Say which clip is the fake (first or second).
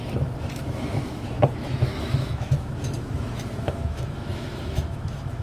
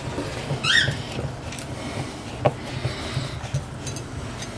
first